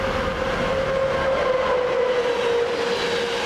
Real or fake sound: real